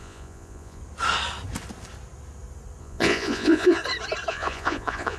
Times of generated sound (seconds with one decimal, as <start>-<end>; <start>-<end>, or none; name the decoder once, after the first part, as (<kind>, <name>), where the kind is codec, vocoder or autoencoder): 0.0-0.8 (vocoder, Vocos); 2.8-3.8; 4.3-5.2